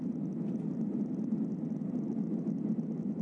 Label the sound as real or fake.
real